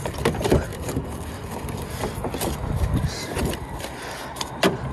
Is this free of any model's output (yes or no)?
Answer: no